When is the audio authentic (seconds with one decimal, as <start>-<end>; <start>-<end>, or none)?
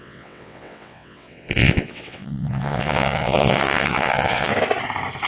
4.5-5.3